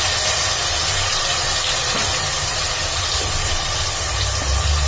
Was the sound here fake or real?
real